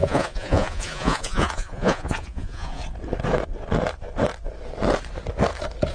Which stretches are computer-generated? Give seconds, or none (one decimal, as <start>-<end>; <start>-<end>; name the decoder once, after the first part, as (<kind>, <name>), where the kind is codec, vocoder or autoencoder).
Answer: 0.0-2.8 (vocoder, Vocos)